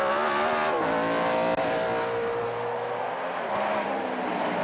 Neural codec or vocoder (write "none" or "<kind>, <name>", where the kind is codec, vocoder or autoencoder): none